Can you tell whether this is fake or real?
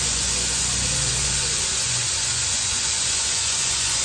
fake